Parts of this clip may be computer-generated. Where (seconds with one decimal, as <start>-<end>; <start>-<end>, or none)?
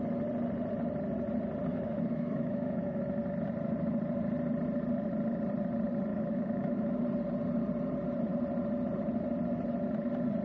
1.7-3.0; 6.1-7.0